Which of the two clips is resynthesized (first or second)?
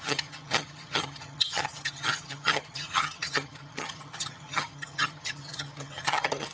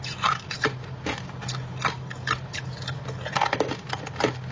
first